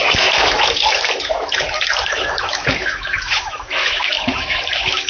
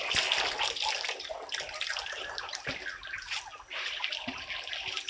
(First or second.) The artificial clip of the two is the first